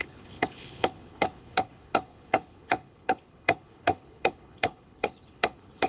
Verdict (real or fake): fake